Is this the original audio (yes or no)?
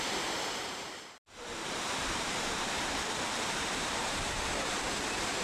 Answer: no